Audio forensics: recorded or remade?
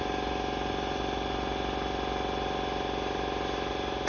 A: recorded